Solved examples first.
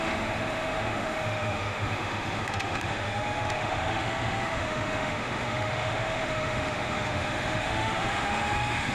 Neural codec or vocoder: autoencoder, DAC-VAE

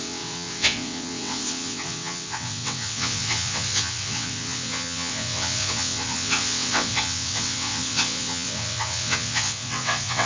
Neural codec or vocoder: vocoder, WaveNeXt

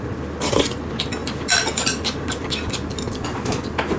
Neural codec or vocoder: none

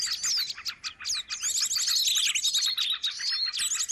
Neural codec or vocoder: none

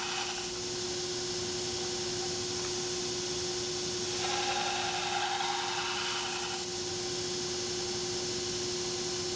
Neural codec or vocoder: none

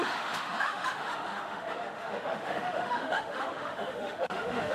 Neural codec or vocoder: autoencoder, DAC-VAE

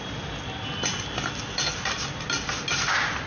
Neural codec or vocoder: none